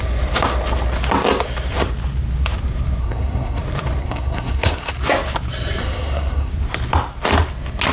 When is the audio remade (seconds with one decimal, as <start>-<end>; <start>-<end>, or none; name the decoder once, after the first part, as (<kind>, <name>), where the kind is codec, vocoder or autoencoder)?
3.0-3.6 (codec, SNAC); 4.0-4.9; 5.8-6.5